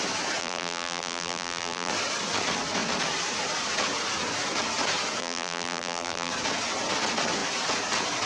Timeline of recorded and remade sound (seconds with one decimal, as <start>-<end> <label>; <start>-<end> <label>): 0.0-0.4 recorded; 0.4-1.9 remade; 1.9-5.2 recorded; 5.2-6.3 remade; 6.3-8.3 recorded